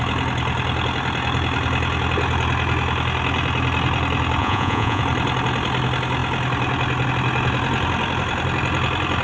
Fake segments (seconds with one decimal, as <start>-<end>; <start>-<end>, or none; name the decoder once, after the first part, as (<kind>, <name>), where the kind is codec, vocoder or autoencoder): 4.4-5.0 (vocoder, Vocos)